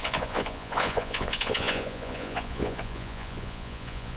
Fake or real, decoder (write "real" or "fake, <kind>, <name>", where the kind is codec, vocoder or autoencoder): fake, vocoder, Vocos